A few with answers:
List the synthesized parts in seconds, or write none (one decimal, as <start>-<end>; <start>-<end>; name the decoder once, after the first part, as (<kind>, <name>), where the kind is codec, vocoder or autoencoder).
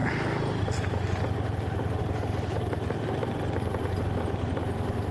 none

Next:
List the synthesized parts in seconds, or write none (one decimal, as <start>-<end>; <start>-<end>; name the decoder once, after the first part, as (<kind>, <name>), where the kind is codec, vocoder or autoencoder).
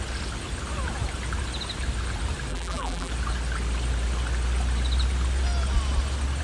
2.5-3.1 (vocoder, BigVGAN v2)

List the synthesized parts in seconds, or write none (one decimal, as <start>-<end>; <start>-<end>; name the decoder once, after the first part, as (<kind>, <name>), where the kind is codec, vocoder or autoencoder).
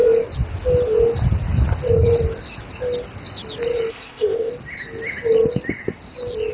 3.9-4.5 (codec, ZipCodec)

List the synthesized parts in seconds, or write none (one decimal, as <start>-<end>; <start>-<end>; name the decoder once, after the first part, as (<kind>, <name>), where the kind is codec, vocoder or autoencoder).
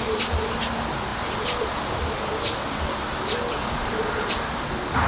none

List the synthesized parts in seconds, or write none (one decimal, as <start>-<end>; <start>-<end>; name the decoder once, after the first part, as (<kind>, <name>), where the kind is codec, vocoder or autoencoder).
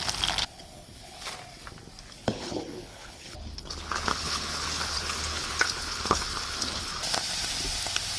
0.4-1.3 (codec, HILCodec); 2.2-6.9